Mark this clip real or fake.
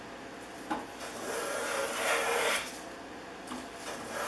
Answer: real